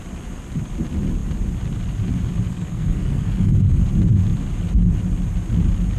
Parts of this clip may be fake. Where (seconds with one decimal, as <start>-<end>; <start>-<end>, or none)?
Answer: 2.5-3.8